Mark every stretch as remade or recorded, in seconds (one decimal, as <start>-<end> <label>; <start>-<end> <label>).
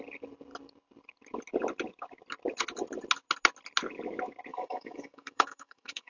0.0-4.5 recorded; 4.5-6.1 remade